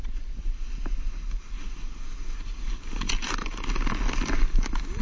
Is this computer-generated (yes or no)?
no